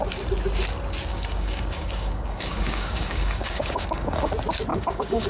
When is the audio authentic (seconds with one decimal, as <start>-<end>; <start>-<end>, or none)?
0.0-1.1; 4.3-4.7